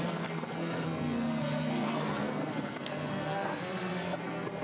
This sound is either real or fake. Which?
fake